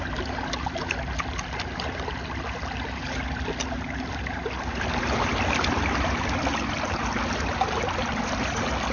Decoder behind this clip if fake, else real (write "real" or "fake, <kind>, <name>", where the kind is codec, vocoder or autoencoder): real